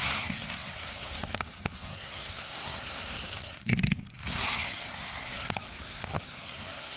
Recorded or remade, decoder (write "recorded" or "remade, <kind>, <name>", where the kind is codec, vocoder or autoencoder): remade, codec, SNAC